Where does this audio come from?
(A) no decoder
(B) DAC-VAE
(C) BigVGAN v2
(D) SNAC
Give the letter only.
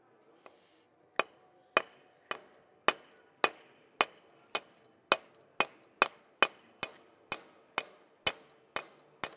A